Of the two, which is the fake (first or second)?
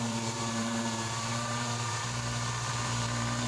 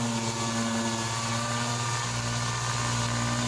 first